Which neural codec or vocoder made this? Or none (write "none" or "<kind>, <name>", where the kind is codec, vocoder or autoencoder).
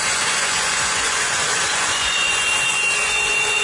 vocoder, Vocos